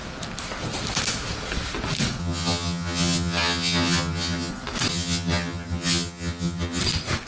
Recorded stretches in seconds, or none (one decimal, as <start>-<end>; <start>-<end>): 0.0-2.2; 4.5-4.9; 6.8-7.3